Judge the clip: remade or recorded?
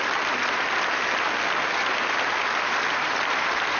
recorded